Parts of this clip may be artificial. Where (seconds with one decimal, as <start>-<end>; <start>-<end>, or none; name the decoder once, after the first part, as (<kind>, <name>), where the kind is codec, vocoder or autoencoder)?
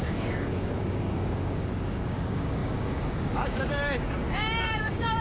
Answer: 0.0-5.2 (codec, DAC)